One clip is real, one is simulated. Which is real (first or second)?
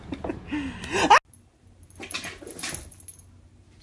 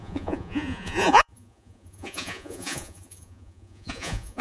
first